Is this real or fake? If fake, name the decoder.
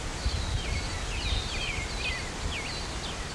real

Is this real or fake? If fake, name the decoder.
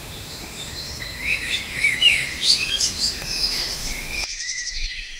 fake, autoencoder, DAC-VAE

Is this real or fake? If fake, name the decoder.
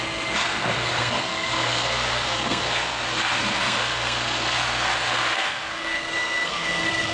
fake, codec, SNAC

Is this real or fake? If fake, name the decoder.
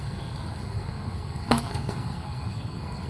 fake, codec, SNAC